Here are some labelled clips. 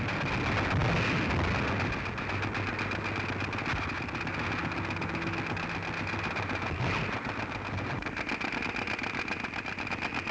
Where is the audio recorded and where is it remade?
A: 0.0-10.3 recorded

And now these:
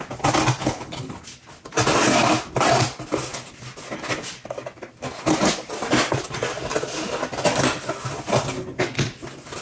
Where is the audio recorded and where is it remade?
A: 0.0-0.6 recorded; 0.6-1.1 remade; 1.1-9.6 recorded